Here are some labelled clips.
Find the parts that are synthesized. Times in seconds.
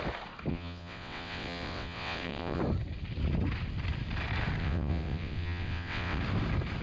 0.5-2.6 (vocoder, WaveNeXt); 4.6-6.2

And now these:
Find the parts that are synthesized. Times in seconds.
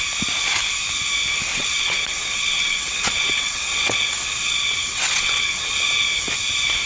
1.5-5.6 (vocoder, WaveNeXt)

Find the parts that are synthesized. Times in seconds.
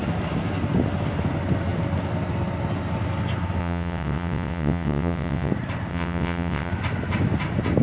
3.6-5.5 (vocoder, WaveNeXt); 5.9-6.7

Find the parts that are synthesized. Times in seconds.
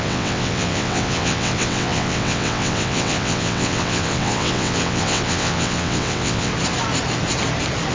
0.0-6.5 (vocoder, WaveNeXt)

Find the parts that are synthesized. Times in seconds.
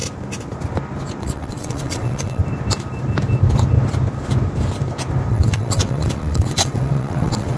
1.2-2.4 (vocoder, WaveNeXt); 5.3-7.6